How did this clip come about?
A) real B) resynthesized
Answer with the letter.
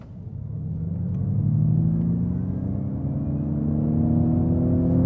A